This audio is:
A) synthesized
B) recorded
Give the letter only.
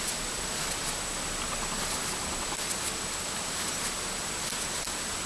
B